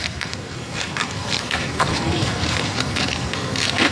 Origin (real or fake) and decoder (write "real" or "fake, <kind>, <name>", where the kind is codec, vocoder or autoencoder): fake, codec, SNAC